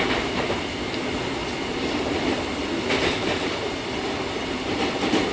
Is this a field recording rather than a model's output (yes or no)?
yes